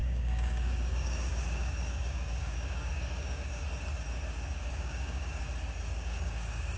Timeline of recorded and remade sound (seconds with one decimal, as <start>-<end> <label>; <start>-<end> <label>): 0.0-3.6 remade; 3.6-4.7 recorded; 4.7-5.4 remade; 5.4-5.9 recorded; 5.9-6.8 remade